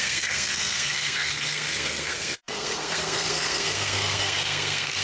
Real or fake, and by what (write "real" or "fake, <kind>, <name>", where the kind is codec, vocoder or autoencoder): fake, codec, SNAC